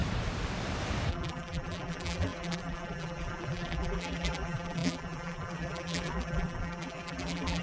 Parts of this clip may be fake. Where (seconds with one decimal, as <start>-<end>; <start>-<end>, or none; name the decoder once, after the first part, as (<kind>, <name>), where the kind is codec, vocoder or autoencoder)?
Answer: 1.1-7.6 (vocoder, BigVGAN v2)